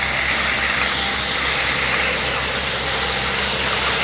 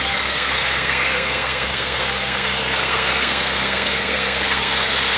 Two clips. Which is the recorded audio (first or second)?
first